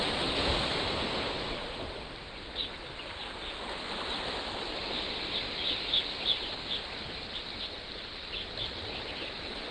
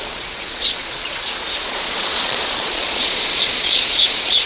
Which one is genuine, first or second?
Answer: first